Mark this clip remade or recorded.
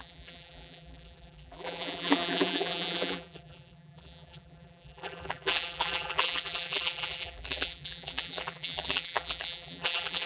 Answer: remade